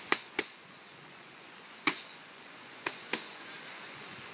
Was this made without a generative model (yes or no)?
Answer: no